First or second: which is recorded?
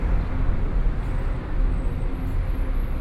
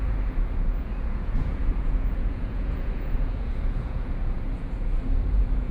first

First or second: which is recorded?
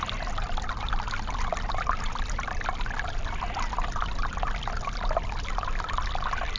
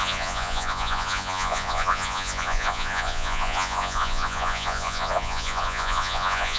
first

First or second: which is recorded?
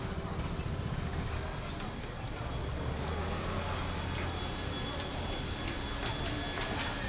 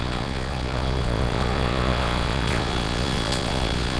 first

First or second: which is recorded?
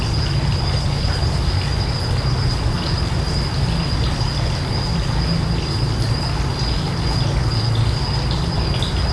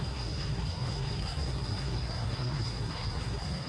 first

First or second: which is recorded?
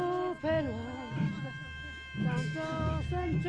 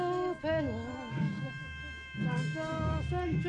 first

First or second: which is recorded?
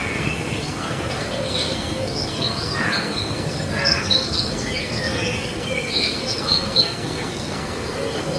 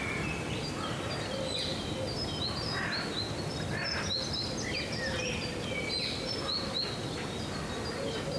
second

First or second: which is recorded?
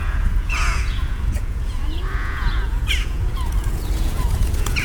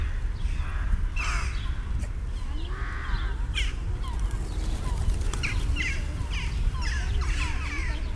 second